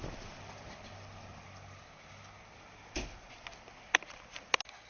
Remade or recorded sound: recorded